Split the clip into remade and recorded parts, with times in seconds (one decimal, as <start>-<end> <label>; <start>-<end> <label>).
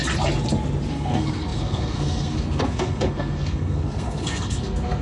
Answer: 0.0-0.9 recorded; 0.9-5.0 remade